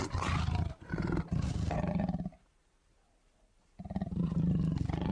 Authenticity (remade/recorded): recorded